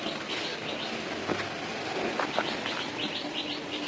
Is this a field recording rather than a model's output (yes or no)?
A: yes